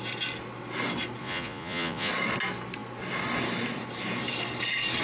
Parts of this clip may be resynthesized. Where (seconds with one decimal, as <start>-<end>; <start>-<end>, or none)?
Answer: 1.2-2.1